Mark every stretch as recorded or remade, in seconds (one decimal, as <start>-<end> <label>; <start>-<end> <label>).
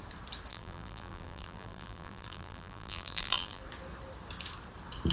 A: 0.0-0.5 recorded; 0.5-3.6 remade; 3.6-5.1 recorded